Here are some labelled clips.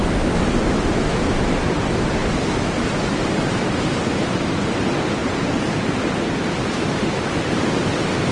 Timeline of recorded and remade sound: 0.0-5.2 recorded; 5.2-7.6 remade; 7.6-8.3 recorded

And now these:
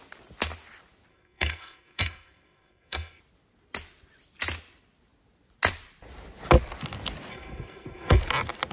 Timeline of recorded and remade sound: 0.0-1.1 recorded; 1.1-3.2 remade; 3.2-7.3 recorded; 7.3-8.2 remade; 8.2-8.7 recorded

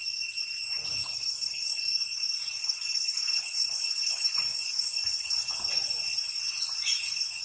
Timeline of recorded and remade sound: 0.0-1.0 recorded; 1.0-1.8 remade; 1.8-2.6 recorded; 2.6-5.5 remade; 5.5-7.4 recorded

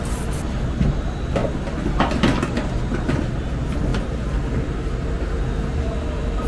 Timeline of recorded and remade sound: 0.0-6.5 recorded

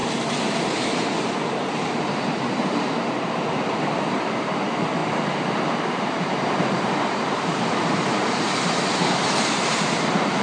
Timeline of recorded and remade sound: 0.0-10.4 remade

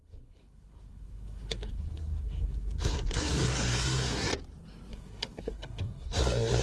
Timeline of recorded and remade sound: 0.0-4.3 remade; 4.3-4.9 recorded; 4.9-6.6 remade